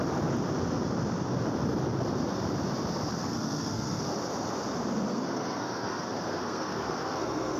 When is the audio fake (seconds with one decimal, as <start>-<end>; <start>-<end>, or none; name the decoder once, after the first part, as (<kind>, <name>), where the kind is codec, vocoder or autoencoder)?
3.2-4.0 (codec, SNAC); 5.1-7.6